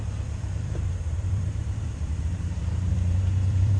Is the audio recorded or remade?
remade